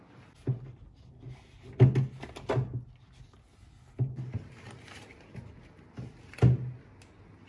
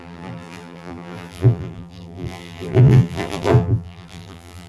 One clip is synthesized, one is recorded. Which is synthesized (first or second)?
second